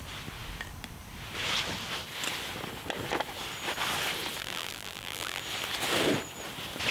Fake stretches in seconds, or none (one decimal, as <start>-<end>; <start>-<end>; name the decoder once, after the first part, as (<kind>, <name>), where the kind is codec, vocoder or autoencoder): 4.4-5.4 (vocoder, BigVGAN v2)